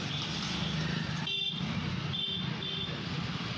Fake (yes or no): no